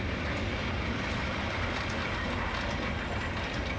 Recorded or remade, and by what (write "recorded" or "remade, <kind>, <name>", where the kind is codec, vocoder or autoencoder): recorded